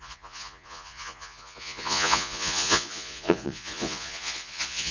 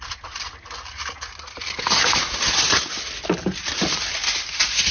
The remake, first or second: first